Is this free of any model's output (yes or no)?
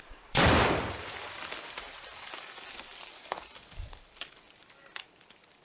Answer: no